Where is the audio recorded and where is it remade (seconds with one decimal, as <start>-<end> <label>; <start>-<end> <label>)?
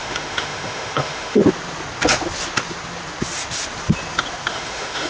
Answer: 0.0-1.4 remade; 1.4-4.5 recorded; 4.5-5.1 remade